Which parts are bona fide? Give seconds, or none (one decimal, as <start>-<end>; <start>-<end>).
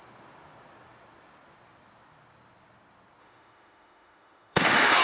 0.0-3.2